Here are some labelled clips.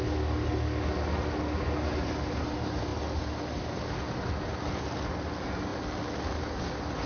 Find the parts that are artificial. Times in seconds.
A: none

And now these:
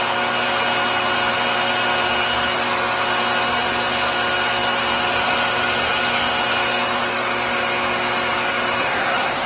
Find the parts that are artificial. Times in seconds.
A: 8.8-9.5 (codec, SNAC)

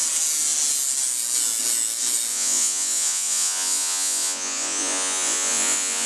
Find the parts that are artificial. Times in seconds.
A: 2.3-6.1 (vocoder, Vocos)

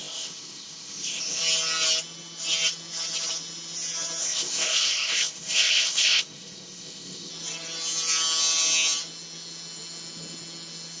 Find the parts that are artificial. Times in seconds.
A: 0.0-1.4 (codec, ZipCodec); 4.2-7.3

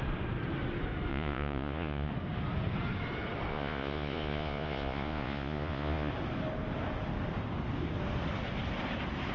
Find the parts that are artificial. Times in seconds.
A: 1.1-2.1 (vocoder, Vocos); 3.5-6.1

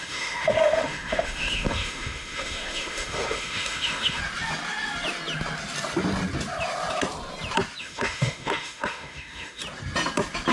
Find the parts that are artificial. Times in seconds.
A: 0.0-4.2 (autoencoder, DAC-VAE); 7.8-9.6

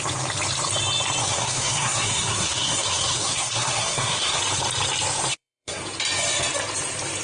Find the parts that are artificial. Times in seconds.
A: 1.2-4.4 (codec, SNAC); 5.3-5.8